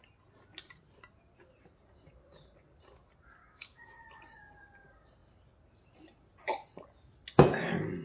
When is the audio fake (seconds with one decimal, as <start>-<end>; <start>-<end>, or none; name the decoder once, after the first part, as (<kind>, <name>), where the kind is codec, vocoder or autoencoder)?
3.4-4.0 (codec, DAC)